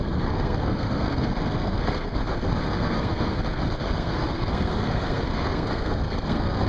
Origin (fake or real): fake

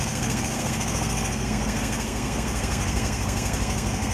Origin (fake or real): fake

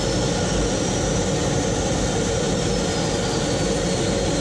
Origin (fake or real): real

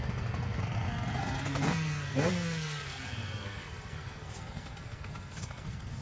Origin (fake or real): fake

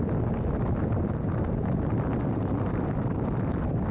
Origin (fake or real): real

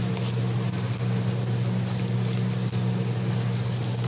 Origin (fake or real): real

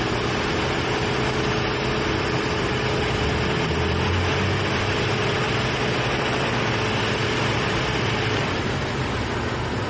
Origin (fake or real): real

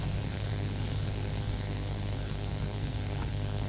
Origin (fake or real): fake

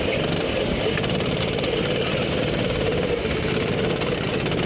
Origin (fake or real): real